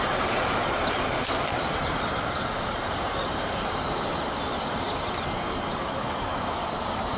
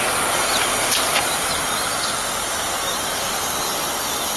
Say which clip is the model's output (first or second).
first